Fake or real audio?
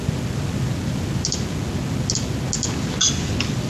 real